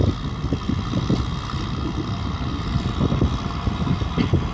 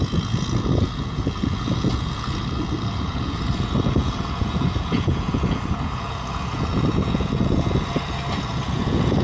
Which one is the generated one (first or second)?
second